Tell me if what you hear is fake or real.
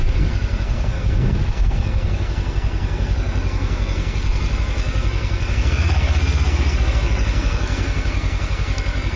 fake